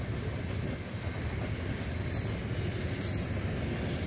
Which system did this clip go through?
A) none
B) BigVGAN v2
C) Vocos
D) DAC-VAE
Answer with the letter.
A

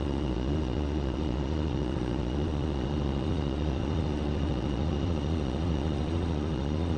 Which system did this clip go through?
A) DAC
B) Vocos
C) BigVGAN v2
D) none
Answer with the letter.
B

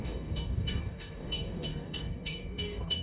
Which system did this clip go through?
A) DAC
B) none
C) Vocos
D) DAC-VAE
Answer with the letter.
A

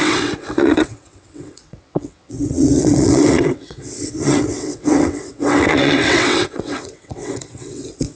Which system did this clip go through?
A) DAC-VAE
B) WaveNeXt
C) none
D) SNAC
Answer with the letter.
B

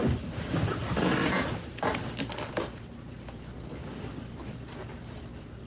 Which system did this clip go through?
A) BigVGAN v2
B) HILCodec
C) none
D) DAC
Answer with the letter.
C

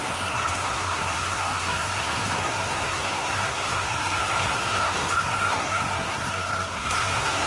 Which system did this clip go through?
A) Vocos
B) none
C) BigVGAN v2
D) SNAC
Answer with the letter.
D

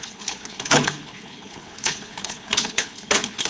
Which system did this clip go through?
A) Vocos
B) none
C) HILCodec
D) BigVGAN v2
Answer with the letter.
C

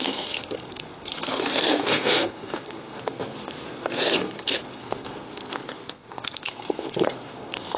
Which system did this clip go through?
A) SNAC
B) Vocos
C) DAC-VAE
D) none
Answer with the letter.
A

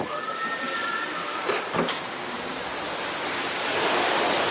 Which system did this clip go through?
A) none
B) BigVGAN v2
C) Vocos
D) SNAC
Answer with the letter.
A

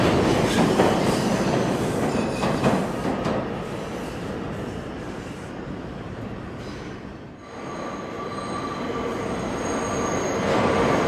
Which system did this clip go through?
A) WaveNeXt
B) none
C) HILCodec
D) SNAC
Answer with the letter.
B